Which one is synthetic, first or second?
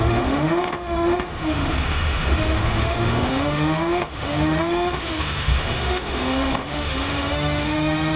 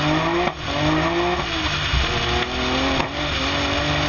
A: first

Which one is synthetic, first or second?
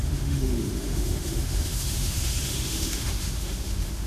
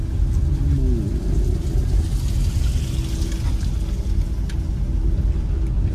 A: first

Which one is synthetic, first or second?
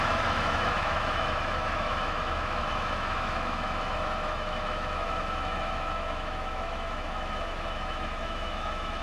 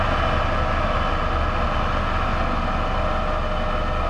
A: first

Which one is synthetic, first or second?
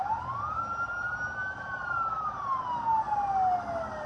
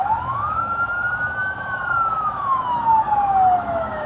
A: second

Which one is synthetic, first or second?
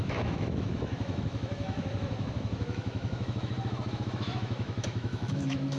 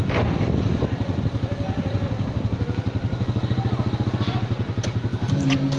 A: first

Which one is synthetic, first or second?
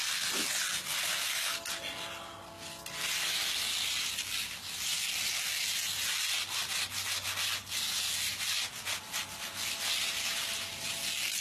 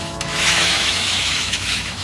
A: second